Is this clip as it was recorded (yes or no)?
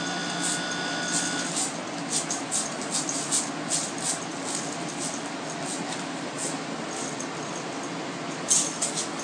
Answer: yes